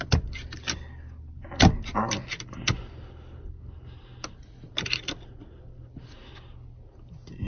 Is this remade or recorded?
recorded